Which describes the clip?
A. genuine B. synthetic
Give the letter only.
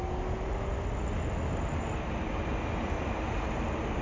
A